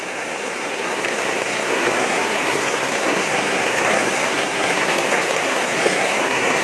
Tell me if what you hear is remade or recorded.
remade